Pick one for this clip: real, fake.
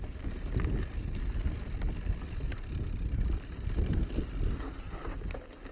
real